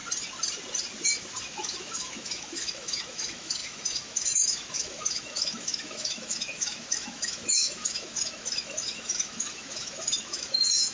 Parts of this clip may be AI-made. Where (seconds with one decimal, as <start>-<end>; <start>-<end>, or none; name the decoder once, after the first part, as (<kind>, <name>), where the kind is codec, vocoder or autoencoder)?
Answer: 1.4-10.9 (autoencoder, DAC-VAE)